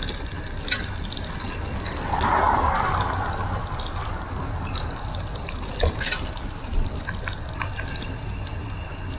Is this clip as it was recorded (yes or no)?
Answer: yes